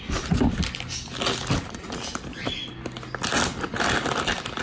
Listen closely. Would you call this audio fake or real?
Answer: real